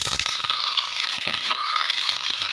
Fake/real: fake